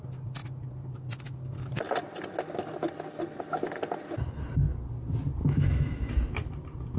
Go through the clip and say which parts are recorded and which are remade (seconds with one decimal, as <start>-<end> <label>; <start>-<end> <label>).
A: 0.0-5.4 recorded; 5.4-6.1 remade; 6.1-7.0 recorded

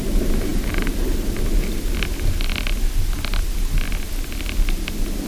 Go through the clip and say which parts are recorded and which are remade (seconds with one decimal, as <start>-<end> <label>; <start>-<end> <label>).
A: 0.0-5.3 recorded

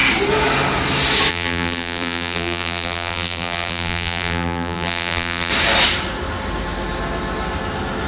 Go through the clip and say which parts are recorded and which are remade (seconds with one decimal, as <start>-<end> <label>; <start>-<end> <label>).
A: 0.0-1.3 recorded; 1.3-5.5 remade; 5.5-8.1 recorded